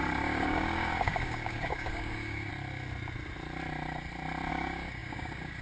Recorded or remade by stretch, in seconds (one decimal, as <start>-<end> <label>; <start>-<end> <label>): 0.0-2.5 remade; 2.5-4.5 recorded; 4.5-5.6 remade